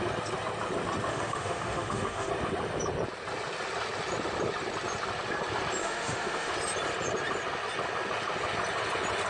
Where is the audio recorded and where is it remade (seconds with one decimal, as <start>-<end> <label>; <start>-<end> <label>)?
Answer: 0.0-1.1 recorded; 1.1-2.3 remade; 2.3-5.8 recorded; 5.8-6.5 remade; 6.5-9.3 recorded

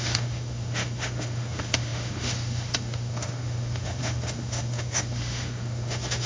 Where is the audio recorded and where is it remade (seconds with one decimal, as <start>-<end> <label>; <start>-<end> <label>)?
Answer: 0.0-6.3 remade

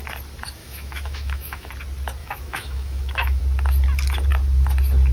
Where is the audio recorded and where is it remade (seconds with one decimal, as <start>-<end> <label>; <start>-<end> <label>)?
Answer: 0.0-0.6 recorded; 0.6-1.7 remade; 1.7-2.2 recorded; 2.2-3.4 remade; 3.4-5.1 recorded

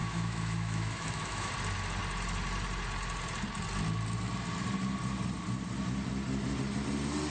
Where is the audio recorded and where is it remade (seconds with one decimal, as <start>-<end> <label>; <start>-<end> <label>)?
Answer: 0.0-1.5 remade; 1.5-7.3 recorded

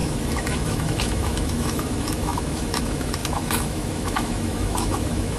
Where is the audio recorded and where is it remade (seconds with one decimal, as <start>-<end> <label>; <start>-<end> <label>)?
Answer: 0.0-5.4 remade